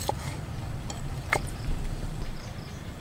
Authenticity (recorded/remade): remade